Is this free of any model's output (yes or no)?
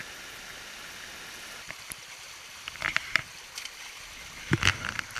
yes